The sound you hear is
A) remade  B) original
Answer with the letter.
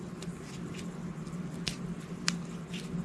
B